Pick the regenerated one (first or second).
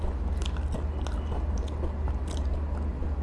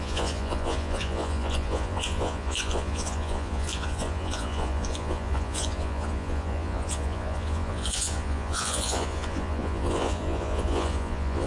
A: second